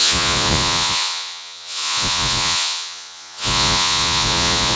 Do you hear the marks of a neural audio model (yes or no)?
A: yes